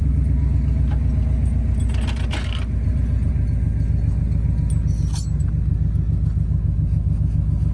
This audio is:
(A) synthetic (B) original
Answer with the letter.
B